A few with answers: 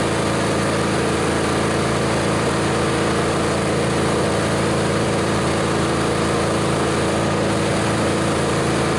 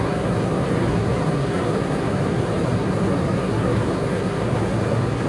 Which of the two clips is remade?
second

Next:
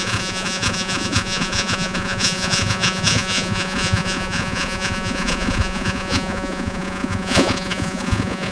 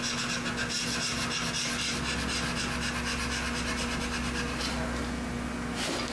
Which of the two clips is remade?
first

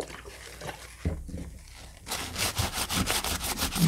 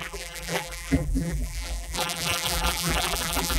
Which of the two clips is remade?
second